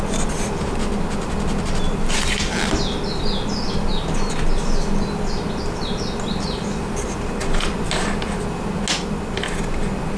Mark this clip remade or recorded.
recorded